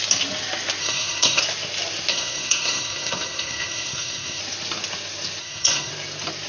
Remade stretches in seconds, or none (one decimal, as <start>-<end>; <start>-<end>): 0.8-1.4; 2.1-4.4; 5.4-5.9